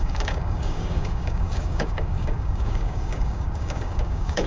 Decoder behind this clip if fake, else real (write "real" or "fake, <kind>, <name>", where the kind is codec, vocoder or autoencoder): fake, codec, DAC